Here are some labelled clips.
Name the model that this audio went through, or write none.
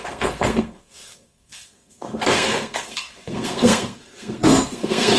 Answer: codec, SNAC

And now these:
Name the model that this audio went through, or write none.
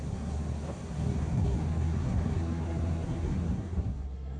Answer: codec, SNAC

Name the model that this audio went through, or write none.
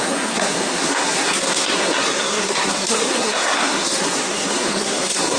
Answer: codec, SNAC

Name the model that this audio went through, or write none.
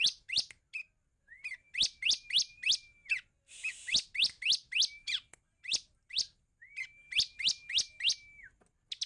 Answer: none